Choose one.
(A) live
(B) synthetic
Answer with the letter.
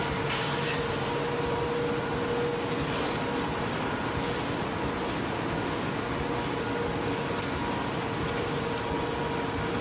A